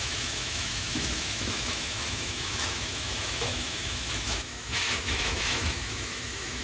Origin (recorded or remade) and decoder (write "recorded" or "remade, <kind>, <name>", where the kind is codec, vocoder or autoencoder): remade, autoencoder, DAC-VAE